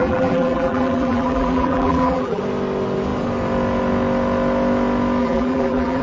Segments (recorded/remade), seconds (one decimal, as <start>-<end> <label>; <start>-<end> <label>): 0.0-2.4 remade; 2.4-5.2 recorded; 5.2-6.0 remade